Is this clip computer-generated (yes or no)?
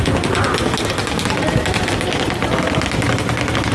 no